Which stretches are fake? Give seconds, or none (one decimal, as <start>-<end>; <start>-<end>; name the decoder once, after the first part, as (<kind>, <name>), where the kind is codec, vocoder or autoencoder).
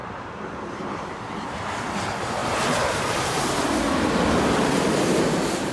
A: 2.4-3.4 (vocoder, BigVGAN v2)